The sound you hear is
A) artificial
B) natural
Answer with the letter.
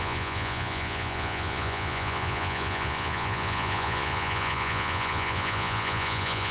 A